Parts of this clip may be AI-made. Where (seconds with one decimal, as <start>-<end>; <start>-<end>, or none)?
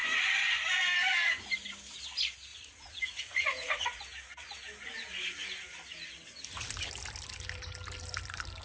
2.5-4.0